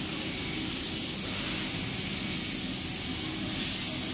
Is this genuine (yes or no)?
yes